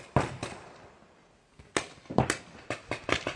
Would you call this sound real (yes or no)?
yes